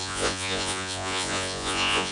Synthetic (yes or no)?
yes